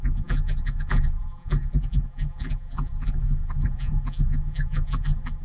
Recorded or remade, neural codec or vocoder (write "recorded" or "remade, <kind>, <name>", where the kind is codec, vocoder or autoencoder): remade, vocoder, BigVGAN v2